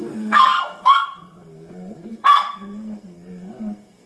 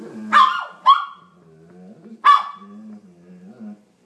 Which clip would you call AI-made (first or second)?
first